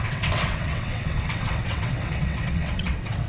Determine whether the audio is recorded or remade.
remade